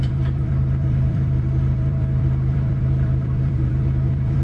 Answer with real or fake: fake